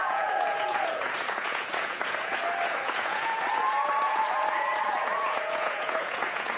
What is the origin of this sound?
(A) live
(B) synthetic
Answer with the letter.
B